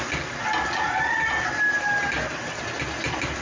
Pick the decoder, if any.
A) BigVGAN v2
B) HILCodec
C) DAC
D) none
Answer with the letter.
D